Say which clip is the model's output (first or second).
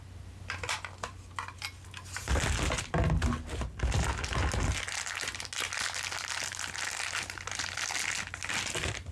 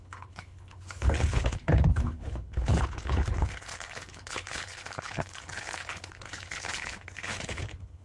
second